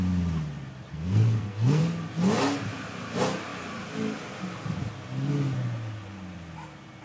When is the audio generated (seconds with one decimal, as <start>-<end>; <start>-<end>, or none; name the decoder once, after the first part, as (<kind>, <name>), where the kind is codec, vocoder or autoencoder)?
0.9-1.8 (codec, SNAC)